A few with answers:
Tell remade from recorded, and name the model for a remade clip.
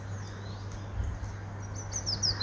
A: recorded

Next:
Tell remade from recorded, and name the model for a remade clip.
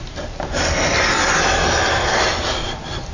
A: recorded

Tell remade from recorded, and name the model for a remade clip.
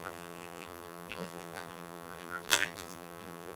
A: remade, vocoder, BigVGAN v2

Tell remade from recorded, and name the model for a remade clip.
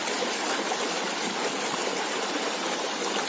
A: recorded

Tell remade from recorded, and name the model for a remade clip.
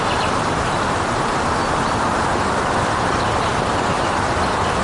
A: remade, vocoder, BigVGAN v2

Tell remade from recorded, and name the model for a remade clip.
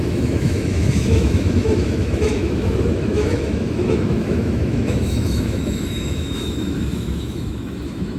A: remade, autoencoder, DAC-VAE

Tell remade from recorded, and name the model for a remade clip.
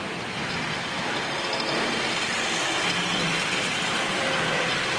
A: recorded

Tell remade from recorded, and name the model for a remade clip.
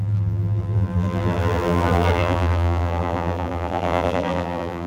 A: remade, vocoder, BigVGAN v2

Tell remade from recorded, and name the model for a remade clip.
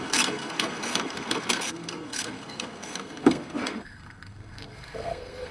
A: remade, codec, SNAC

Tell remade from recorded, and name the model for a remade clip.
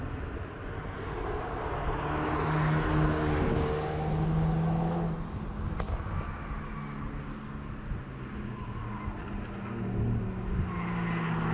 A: recorded